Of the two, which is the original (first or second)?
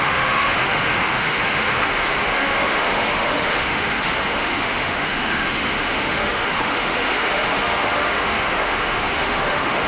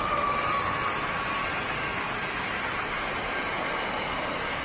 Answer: second